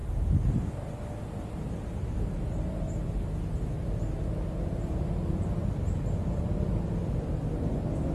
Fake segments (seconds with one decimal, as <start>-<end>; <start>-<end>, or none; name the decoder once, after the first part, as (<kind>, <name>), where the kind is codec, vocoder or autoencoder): none